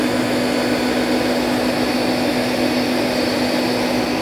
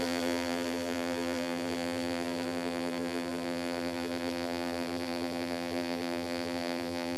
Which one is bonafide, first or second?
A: first